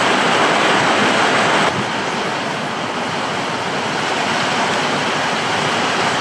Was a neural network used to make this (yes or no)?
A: no